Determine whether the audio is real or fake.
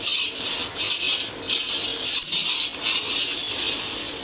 real